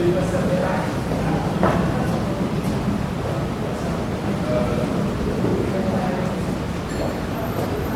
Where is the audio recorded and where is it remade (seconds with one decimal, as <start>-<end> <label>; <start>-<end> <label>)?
0.0-0.6 remade; 0.6-4.7 recorded; 4.7-5.5 remade; 5.5-6.9 recorded; 6.9-8.0 remade